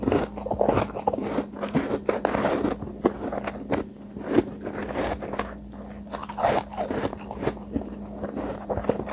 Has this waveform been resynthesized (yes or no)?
no